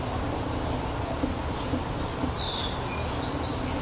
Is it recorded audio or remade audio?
recorded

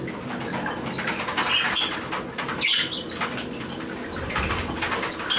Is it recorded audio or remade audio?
recorded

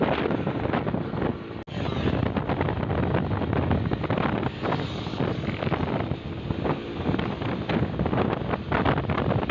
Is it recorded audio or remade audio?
recorded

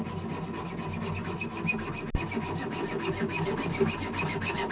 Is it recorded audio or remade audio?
recorded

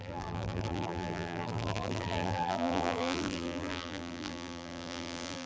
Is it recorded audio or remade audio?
remade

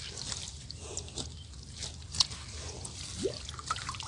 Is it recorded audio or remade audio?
recorded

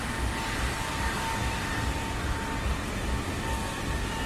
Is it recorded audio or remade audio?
recorded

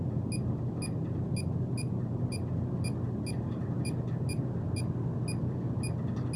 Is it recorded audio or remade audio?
recorded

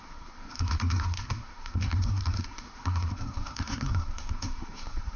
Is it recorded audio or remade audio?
remade